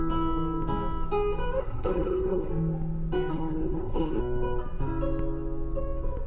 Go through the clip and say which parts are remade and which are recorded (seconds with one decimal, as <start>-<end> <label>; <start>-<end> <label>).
0.0-1.6 recorded; 1.6-2.5 remade; 2.5-3.3 recorded; 3.3-4.2 remade; 4.2-6.3 recorded